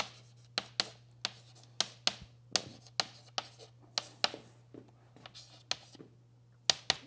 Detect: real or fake real